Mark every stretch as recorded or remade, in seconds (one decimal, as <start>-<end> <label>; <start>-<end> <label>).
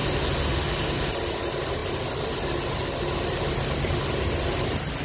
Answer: 0.0-5.0 recorded